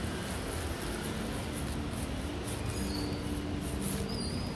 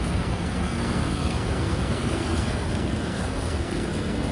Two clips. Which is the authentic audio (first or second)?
first